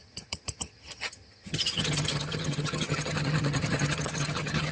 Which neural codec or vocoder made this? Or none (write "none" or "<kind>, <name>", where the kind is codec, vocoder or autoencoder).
vocoder, HiFi-GAN